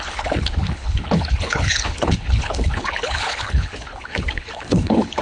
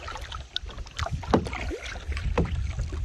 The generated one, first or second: first